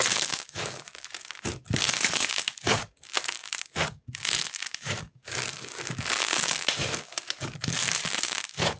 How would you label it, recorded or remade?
remade